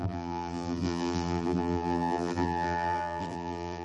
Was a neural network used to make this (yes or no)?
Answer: yes